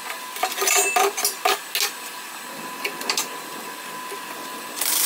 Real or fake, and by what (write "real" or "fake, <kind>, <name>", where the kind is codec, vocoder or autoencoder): real